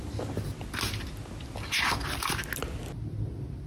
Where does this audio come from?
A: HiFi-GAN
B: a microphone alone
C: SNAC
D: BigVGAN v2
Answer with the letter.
B